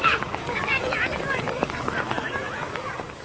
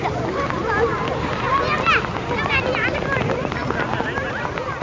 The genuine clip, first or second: second